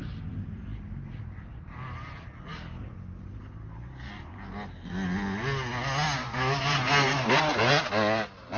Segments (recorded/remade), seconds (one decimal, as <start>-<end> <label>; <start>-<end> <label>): 0.0-8.6 recorded